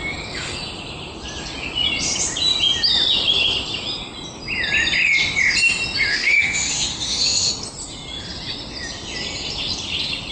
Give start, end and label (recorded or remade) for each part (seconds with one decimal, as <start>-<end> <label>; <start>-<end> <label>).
0.0-6.1 recorded; 6.1-7.5 remade; 7.5-10.3 recorded